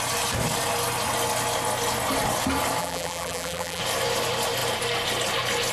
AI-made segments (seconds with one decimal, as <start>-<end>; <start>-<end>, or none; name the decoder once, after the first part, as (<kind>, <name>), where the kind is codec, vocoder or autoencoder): 2.8-3.8 (vocoder, BigVGAN v2)